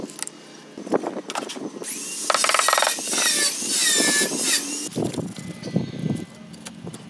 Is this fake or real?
real